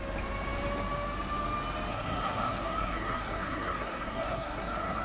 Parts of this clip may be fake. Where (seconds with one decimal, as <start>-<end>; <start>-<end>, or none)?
1.9-5.0